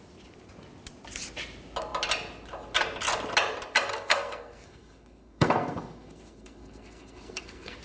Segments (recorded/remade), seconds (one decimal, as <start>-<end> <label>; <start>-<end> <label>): 0.0-3.9 recorded; 3.9-7.8 remade